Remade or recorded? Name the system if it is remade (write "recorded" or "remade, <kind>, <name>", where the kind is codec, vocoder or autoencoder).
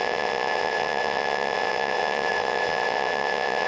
remade, vocoder, WaveNeXt